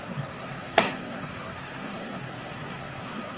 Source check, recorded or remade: remade